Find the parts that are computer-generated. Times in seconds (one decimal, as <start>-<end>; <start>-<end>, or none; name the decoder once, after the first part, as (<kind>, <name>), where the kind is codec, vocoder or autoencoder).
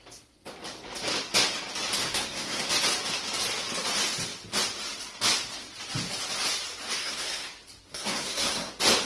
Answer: 2.0-2.7 (codec, SNAC); 7.0-7.5; 7.9-8.7